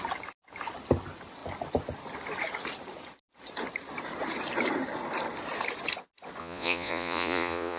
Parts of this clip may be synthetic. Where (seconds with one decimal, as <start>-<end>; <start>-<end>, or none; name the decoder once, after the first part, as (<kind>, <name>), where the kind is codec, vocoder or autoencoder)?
6.4-7.8 (vocoder, Vocos)